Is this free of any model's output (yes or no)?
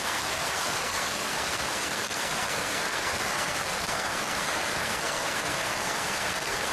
no